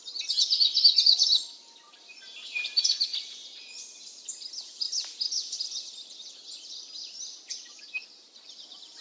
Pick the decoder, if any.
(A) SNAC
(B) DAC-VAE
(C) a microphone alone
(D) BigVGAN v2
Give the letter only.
D